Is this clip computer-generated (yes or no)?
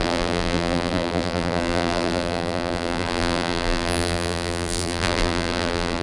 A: yes